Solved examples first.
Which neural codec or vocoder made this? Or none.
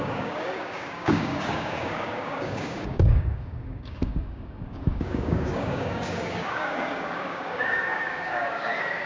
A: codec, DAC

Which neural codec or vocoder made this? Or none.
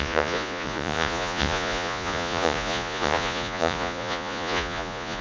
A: vocoder, Vocos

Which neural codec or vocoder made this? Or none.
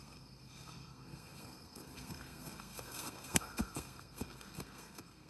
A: codec, SNAC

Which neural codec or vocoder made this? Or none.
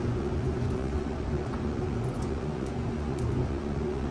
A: vocoder, Vocos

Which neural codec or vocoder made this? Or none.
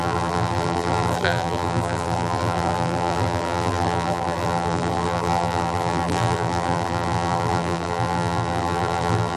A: vocoder, BigVGAN v2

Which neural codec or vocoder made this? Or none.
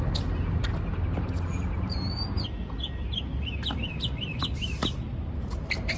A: none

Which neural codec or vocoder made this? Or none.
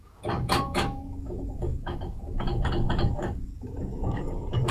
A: codec, DAC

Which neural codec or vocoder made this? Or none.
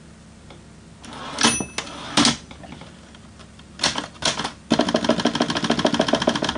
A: none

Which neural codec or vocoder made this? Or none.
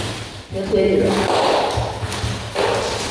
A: none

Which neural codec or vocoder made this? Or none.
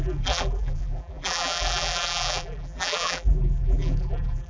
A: vocoder, BigVGAN v2